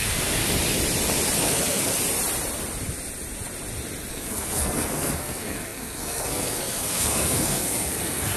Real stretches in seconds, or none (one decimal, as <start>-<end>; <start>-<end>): 0.4-1.4; 1.9-4.1